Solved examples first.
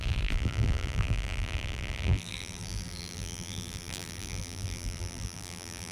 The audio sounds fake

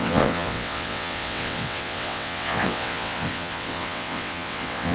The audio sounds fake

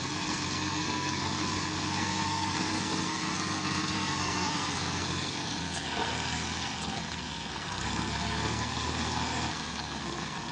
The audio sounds fake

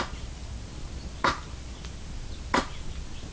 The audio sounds real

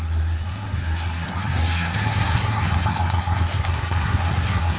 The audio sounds fake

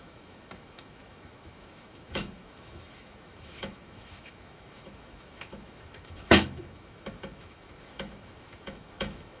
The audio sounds fake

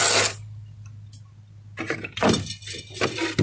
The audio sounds real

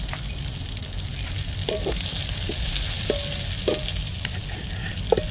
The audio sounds real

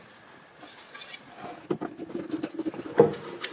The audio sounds real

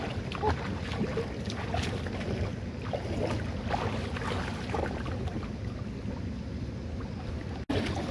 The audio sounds real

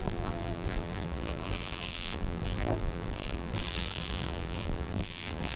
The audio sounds fake